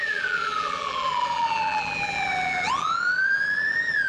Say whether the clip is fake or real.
fake